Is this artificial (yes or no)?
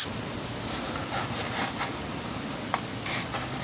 no